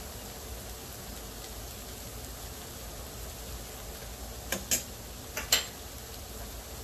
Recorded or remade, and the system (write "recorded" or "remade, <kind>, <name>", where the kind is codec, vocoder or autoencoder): recorded